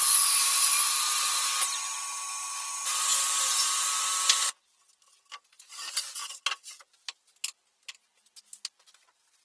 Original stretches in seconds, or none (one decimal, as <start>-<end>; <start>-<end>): 1.4-5.5; 6.3-9.4